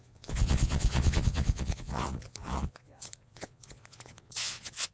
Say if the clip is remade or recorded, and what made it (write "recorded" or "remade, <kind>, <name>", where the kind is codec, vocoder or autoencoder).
remade, vocoder, Vocos